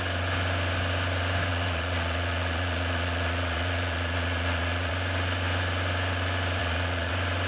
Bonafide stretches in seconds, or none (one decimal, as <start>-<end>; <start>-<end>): 0.0-1.5; 4.9-6.6; 7.1-7.5